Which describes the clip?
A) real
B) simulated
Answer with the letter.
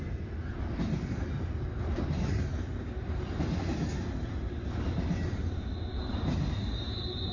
A